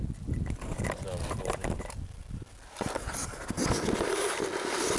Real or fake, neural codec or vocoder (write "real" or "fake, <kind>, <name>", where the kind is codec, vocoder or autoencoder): real